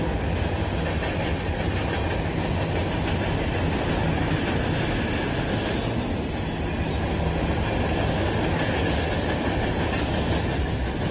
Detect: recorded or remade recorded